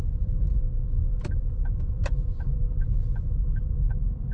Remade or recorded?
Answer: remade